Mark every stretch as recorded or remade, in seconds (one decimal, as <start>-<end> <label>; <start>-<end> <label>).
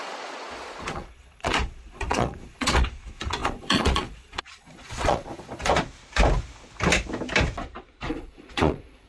0.0-5.7 remade; 5.7-8.1 recorded; 8.1-9.1 remade